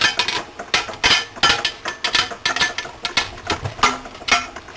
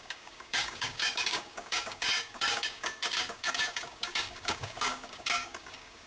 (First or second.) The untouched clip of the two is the first